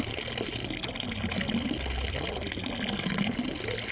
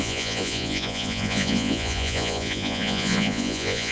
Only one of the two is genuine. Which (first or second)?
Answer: first